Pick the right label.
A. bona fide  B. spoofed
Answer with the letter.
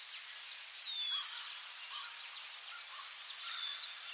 A